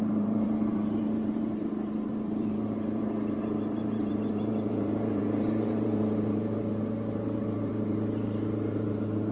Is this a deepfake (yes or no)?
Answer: yes